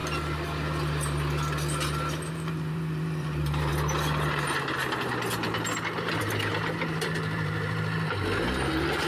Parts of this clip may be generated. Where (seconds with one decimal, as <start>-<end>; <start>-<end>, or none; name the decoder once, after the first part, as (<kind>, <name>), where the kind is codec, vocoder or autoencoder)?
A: 2.3-3.7 (vocoder, BigVGAN v2); 6.2-9.1